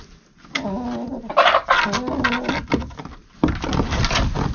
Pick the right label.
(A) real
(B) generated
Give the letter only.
A